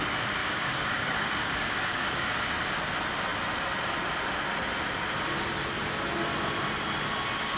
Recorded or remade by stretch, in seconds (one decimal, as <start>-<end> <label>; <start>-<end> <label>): 0.0-0.4 recorded; 0.4-2.5 remade; 2.5-7.6 recorded